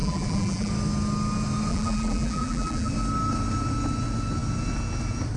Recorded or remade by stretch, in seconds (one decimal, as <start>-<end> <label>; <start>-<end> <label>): 0.0-0.7 remade; 0.7-1.7 recorded; 1.7-2.9 remade; 2.9-5.4 recorded

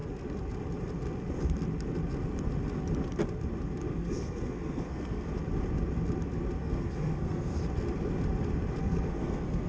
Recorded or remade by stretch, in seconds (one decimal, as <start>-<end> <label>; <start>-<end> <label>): 0.0-3.9 recorded; 3.9-5.3 remade; 5.3-6.6 recorded; 6.6-7.6 remade; 7.6-8.8 recorded; 8.8-9.7 remade